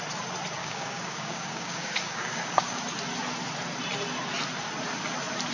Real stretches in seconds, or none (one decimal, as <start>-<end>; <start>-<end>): 0.0-0.6; 2.8-5.5